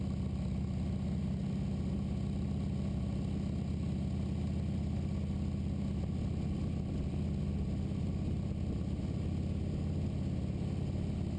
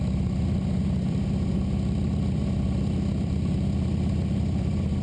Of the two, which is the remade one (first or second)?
second